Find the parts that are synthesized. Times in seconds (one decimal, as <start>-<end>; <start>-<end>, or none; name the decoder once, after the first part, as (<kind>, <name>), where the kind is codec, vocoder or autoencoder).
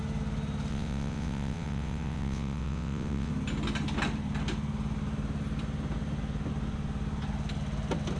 0.7-3.3 (vocoder, WaveNeXt)